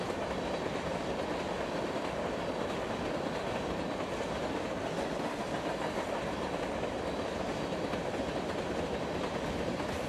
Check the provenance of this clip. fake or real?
real